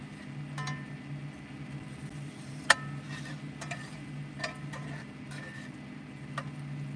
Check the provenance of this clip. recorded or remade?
recorded